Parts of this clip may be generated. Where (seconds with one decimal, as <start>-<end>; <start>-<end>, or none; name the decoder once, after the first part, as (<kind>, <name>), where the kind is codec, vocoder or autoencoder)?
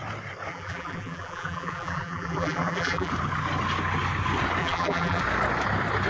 0.5-3.1 (vocoder, BigVGAN v2); 4.6-5.2